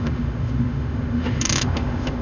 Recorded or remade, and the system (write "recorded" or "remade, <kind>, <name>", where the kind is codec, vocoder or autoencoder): remade, autoencoder, DAC-VAE